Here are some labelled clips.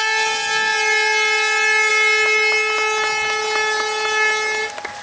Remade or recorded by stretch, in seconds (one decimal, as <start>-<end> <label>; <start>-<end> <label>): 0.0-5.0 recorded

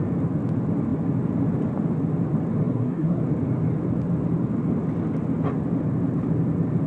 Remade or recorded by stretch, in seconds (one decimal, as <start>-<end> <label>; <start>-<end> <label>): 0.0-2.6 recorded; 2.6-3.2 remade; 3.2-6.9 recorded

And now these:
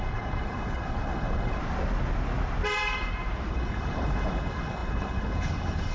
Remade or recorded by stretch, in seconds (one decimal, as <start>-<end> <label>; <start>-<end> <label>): 0.0-1.6 remade; 1.6-3.5 recorded; 3.5-5.9 remade

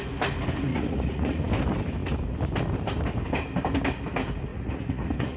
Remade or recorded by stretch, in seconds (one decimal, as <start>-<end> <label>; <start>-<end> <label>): 0.0-0.7 recorded; 0.7-1.5 remade; 1.5-4.5 recorded; 4.5-5.4 remade